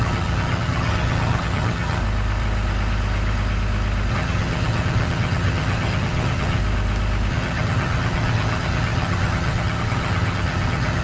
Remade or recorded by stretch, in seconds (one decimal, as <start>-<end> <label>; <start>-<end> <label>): 0.0-2.0 remade; 2.0-4.1 recorded; 4.1-6.6 remade; 6.6-7.3 recorded; 7.3-11.0 remade